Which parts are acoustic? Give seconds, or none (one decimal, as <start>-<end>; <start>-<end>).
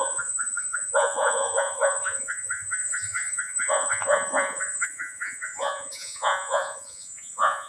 none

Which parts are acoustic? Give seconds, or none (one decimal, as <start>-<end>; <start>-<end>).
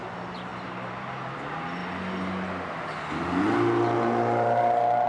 0.0-0.5; 1.4-5.1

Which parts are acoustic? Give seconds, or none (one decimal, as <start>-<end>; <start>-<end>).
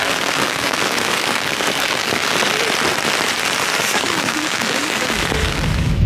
2.2-3.8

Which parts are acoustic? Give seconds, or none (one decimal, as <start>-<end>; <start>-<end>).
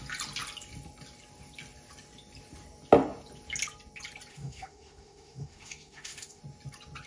0.0-4.3; 6.4-7.1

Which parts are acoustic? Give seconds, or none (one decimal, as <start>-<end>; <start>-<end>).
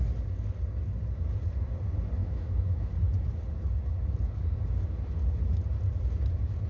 0.0-2.2; 2.9-6.7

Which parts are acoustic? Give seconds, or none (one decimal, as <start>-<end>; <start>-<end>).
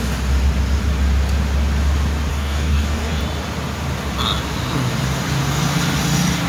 0.0-2.3; 3.2-6.5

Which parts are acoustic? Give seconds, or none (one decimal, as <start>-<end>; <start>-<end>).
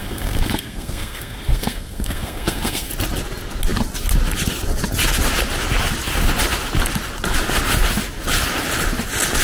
2.9-9.4